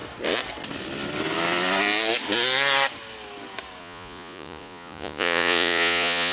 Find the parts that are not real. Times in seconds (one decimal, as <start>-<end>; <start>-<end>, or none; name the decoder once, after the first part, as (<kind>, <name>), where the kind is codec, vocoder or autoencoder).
3.8-6.3 (vocoder, Vocos)